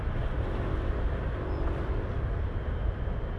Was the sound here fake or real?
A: real